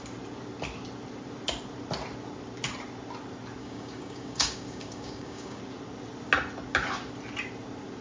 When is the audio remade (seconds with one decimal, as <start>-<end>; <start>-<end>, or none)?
3.6-5.6